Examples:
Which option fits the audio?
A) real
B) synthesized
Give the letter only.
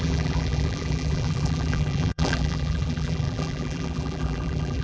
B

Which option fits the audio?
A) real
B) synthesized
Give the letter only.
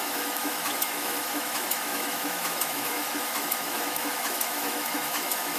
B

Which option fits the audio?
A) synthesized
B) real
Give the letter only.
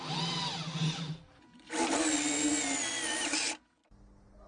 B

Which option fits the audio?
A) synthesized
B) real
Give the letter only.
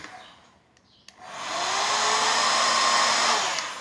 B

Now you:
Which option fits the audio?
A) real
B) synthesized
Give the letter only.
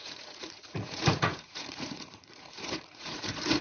B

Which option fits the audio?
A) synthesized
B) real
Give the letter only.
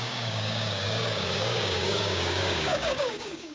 A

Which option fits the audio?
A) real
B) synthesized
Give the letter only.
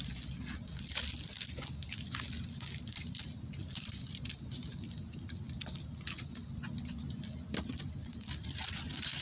A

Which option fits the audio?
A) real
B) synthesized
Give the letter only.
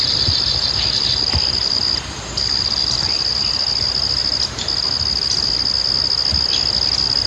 A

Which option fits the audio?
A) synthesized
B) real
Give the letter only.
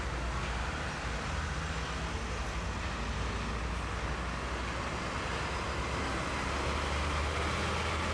B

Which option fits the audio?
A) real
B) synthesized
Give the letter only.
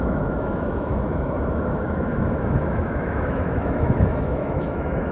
B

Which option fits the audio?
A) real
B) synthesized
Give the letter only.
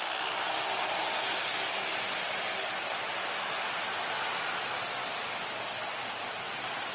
A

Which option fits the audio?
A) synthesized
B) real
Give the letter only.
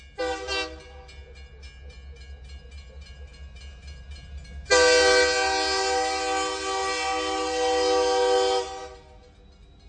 B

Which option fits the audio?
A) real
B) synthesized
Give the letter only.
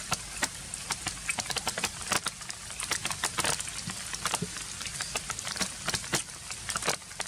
A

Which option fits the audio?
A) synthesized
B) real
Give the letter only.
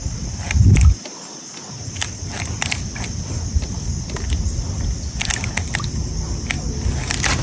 B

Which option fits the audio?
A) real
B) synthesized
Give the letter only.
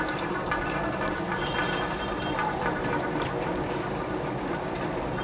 B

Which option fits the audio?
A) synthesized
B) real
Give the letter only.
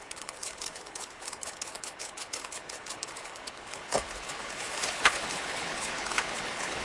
A